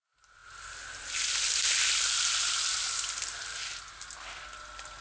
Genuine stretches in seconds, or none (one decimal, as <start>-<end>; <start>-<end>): 0.0-5.0